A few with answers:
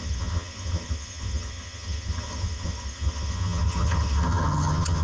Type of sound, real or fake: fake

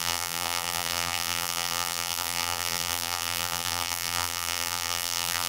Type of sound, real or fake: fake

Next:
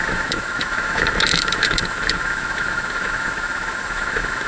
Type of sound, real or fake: fake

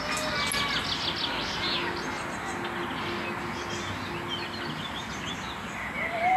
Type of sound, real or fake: real